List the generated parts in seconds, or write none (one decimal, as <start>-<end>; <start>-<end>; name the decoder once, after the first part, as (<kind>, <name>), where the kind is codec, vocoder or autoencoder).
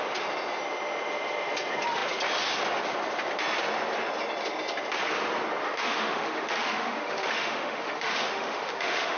5.6-9.2 (autoencoder, DAC-VAE)